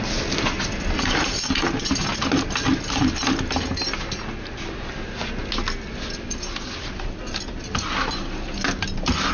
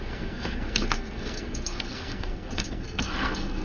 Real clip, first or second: first